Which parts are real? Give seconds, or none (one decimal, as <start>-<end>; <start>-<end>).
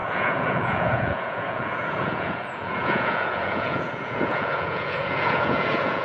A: none